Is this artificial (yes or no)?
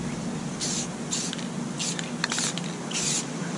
no